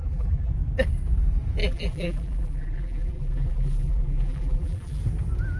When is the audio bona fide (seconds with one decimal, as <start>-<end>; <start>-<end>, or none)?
0.5-1.6; 5.0-5.6